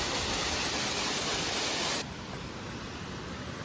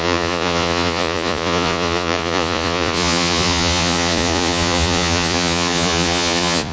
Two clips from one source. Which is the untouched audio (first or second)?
first